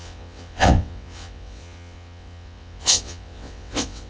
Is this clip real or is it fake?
fake